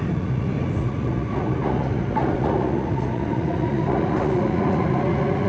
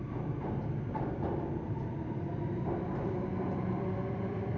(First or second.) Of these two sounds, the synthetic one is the first